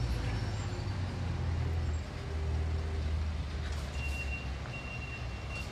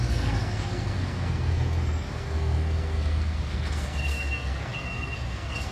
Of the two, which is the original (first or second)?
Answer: first